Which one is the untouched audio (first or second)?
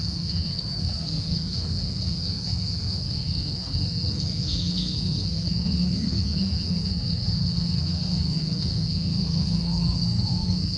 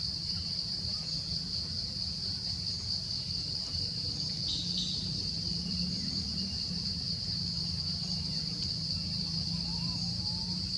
second